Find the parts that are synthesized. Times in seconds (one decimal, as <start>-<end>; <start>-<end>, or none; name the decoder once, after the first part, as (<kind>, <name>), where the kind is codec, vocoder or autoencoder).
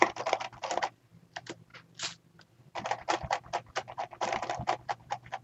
0.0-1.7 (vocoder, BigVGAN v2); 2.3-5.4